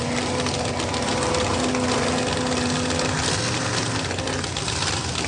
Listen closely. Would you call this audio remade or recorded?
recorded